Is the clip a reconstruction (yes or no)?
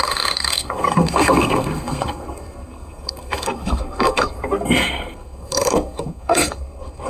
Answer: yes